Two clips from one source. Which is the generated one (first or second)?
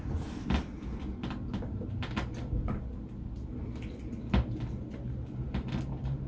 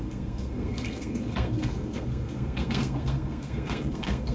second